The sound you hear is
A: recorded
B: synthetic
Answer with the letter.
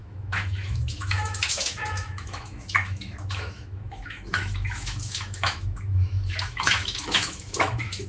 B